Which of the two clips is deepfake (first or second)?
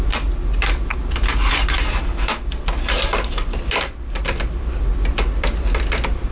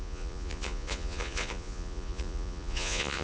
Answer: second